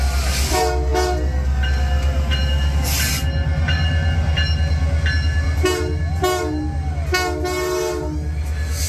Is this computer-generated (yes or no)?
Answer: no